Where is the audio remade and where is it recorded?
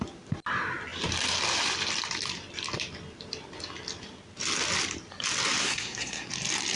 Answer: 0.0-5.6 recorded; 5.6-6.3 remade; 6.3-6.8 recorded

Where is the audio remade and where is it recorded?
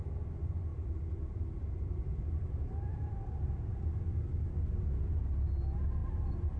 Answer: 0.0-6.6 recorded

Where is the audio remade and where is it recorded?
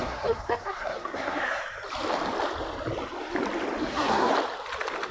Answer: 0.0-1.6 remade; 1.6-3.8 recorded; 3.8-4.3 remade; 4.3-5.1 recorded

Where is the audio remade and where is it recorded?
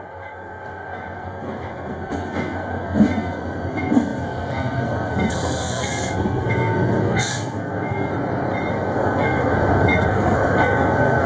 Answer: 0.0-8.1 remade; 8.1-8.7 recorded; 8.7-11.3 remade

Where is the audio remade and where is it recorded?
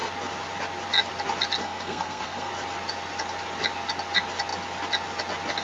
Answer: 0.0-1.6 recorded; 1.6-2.5 remade; 2.5-5.6 recorded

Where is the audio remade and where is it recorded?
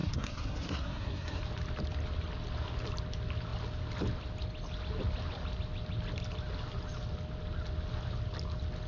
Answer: 0.0-1.4 remade; 1.4-8.9 recorded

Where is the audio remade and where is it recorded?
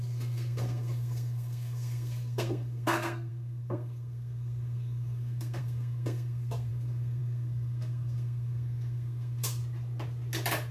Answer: 0.0-9.6 remade; 9.6-10.7 recorded